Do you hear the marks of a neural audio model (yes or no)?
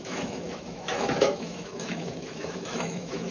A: yes